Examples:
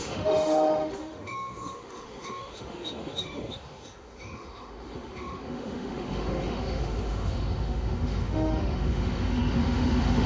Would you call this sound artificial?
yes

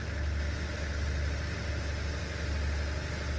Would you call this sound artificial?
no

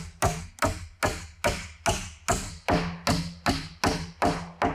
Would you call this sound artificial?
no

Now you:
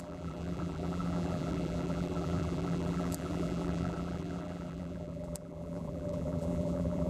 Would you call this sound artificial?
yes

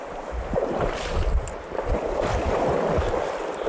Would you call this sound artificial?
no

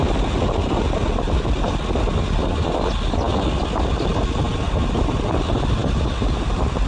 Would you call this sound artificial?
no